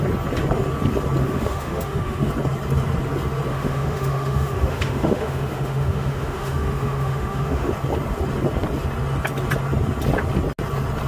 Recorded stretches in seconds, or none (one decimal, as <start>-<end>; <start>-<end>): 0.0-1.2; 2.3-3.5; 7.7-11.1